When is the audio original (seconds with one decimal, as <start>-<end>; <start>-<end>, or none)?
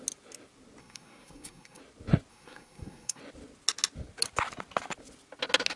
0.0-0.8; 1.8-2.3; 3.2-5.8